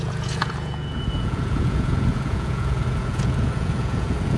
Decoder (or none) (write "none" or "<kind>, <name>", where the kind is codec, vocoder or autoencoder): vocoder, Vocos